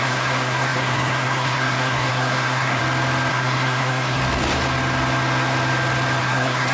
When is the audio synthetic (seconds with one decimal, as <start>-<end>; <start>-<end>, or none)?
0.0-2.8; 3.3-4.2; 6.2-6.7